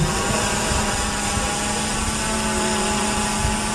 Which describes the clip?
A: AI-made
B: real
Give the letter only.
B